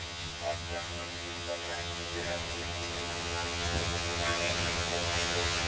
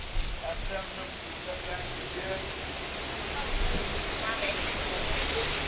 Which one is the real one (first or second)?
second